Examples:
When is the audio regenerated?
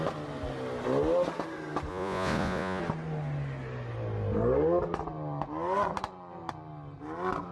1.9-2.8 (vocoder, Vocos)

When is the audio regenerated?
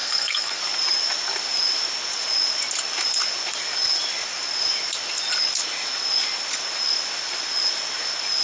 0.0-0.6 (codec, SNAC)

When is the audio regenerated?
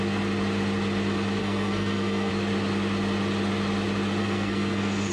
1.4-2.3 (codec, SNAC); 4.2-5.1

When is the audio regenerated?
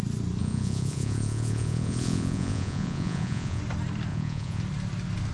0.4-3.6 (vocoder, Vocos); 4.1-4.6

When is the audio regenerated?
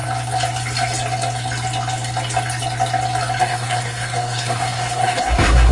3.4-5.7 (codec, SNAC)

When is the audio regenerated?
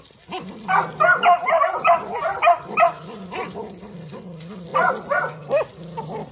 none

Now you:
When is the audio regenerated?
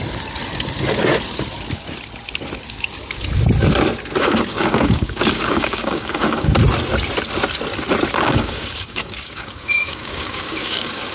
4.2-6.6 (codec, DAC); 8.2-11.1